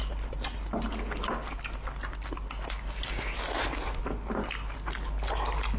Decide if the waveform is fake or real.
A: real